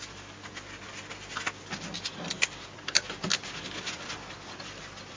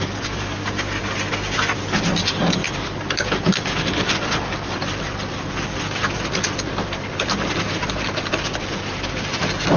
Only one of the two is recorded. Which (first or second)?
first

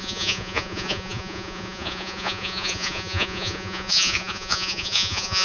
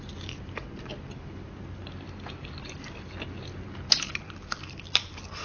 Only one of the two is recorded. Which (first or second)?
second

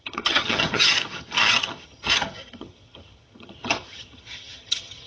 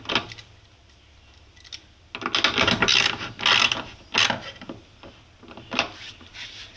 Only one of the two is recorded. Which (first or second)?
second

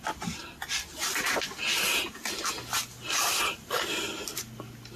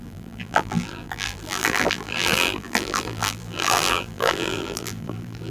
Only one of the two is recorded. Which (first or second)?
first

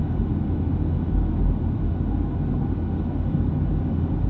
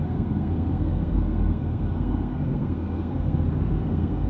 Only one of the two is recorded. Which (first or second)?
first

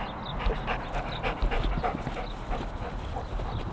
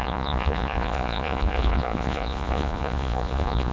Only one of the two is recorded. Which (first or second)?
first